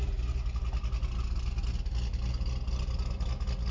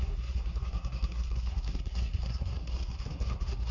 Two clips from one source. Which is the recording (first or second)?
first